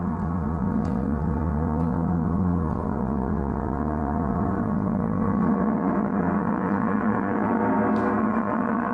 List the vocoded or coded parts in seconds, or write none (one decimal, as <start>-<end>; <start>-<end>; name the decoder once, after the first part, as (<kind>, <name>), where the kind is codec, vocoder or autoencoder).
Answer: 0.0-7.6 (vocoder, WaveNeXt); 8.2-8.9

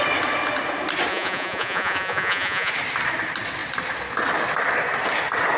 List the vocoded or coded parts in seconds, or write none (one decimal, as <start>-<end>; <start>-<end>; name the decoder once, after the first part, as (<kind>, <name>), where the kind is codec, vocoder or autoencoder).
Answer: 1.1-2.7 (vocoder, Vocos)

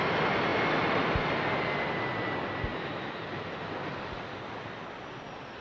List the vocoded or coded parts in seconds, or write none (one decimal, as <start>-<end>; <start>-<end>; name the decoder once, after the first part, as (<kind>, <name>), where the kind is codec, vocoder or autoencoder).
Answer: none

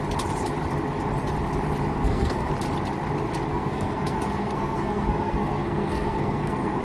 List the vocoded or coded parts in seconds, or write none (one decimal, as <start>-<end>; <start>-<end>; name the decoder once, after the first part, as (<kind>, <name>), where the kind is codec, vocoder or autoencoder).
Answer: 1.9-2.5 (codec, SNAC); 3.5-6.8

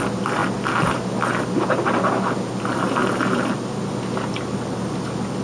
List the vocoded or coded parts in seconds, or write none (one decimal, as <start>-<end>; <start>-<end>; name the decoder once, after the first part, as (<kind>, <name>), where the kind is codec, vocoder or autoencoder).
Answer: none

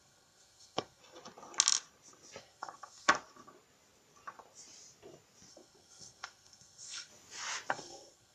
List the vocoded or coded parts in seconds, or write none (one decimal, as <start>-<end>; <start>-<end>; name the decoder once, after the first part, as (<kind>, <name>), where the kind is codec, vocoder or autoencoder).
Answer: 0.0-1.0 (codec, SNAC); 2.4-3.1; 5.5-7.1; 7.7-8.3